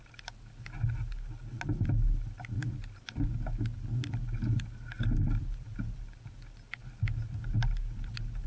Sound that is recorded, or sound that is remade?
recorded